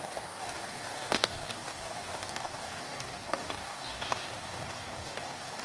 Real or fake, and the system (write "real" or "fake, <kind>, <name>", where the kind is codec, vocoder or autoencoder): fake, codec, DAC